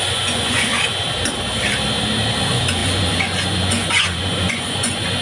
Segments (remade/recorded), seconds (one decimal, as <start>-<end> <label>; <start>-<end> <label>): 0.0-0.7 remade; 0.7-2.4 recorded; 2.4-5.2 remade